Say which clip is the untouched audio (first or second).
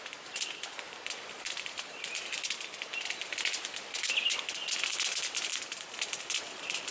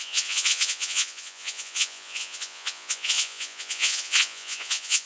first